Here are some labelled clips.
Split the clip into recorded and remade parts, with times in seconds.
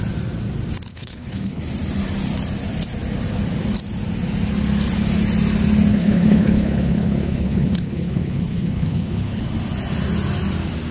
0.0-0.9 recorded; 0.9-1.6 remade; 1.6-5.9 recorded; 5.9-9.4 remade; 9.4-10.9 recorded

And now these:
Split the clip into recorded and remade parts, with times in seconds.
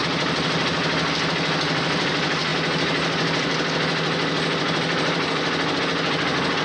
0.0-6.6 recorded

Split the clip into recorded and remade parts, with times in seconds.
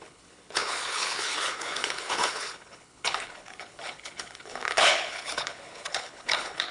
0.0-6.7 remade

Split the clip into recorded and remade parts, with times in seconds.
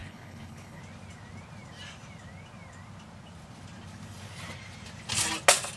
0.0-0.8 remade; 0.8-5.8 recorded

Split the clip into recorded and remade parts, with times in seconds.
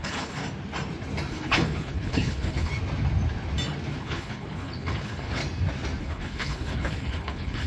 0.0-0.4 remade; 0.4-1.3 recorded; 1.3-2.7 remade; 2.7-4.0 recorded; 4.0-5.4 remade; 5.4-6.0 recorded; 6.0-7.7 remade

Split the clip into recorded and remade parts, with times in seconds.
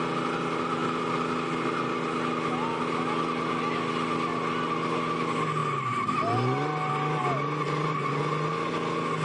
0.0-9.2 recorded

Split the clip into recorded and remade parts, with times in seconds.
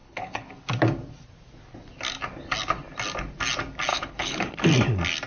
0.0-0.5 remade; 0.5-3.9 recorded; 3.9-4.5 remade; 4.5-5.3 recorded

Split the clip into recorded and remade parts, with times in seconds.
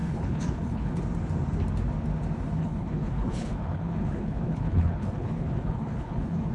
0.0-1.0 remade; 1.0-2.6 recorded; 2.6-6.5 remade